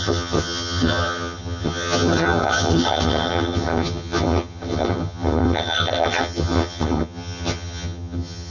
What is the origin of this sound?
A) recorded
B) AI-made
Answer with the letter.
B